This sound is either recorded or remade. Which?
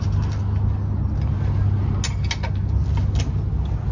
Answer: recorded